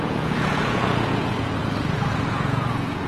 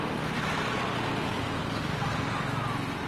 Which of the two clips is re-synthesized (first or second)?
first